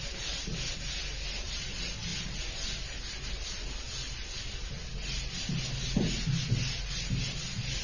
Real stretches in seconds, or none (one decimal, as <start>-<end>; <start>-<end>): 0.0-7.8